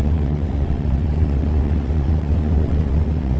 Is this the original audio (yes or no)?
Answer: no